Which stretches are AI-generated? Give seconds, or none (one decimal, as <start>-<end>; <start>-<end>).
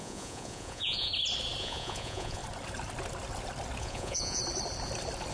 0.0-1.1; 1.6-2.4; 3.8-4.4